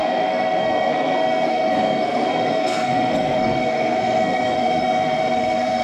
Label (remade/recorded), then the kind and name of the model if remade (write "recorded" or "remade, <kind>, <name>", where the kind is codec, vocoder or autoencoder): remade, codec, SNAC